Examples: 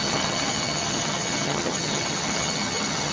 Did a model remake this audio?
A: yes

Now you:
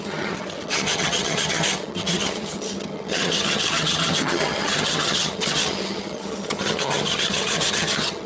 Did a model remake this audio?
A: yes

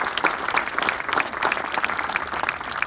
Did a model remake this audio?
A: no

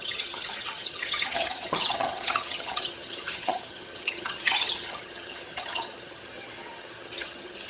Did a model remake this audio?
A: yes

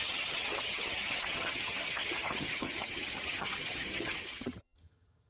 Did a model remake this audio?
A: yes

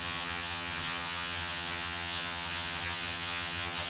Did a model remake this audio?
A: yes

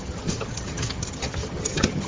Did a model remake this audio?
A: yes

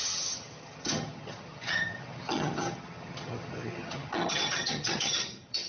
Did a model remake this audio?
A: yes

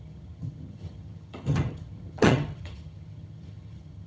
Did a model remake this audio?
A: yes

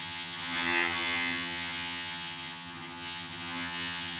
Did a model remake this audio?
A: yes